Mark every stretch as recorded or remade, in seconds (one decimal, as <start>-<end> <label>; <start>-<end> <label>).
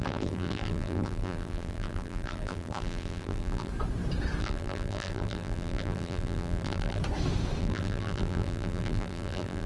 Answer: 0.0-3.7 remade; 3.7-4.4 recorded; 4.4-7.0 remade; 7.0-7.6 recorded; 7.6-9.7 remade